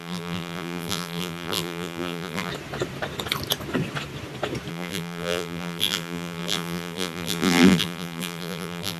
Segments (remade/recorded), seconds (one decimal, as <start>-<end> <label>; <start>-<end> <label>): 0.0-2.5 remade; 2.5-4.7 recorded; 4.7-9.0 remade